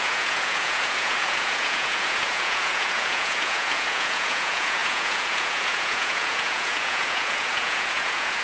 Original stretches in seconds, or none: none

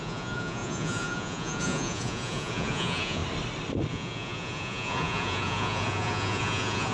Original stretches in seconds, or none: 3.2-3.9

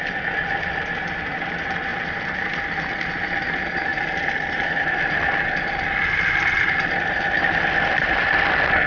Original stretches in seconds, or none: 0.0-8.9